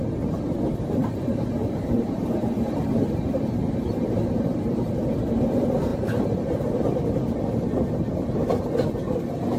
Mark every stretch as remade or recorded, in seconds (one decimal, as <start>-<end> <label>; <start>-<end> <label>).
0.0-1.3 recorded; 1.3-5.2 remade; 5.2-9.6 recorded